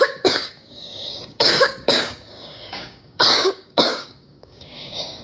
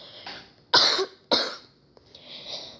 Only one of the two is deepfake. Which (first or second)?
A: first